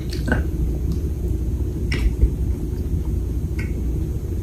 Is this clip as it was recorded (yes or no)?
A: yes